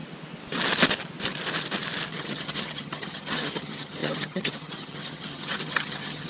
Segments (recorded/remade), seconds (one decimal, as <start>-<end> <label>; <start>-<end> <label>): 0.0-2.1 recorded; 2.1-6.3 remade